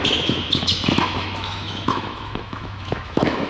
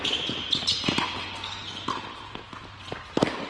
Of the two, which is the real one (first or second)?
second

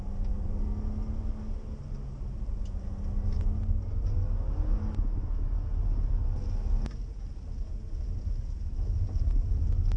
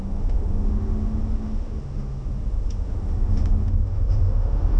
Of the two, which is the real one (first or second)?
first